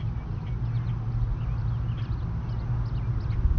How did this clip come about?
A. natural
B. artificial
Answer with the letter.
A